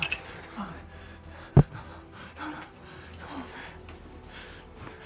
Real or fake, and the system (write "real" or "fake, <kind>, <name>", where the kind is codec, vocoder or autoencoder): real